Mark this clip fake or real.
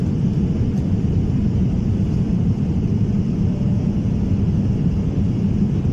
fake